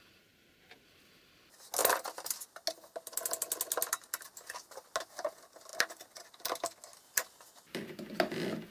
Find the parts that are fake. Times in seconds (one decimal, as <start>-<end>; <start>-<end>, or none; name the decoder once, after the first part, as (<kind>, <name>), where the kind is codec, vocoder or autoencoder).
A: none